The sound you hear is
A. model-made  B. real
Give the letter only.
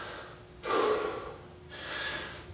B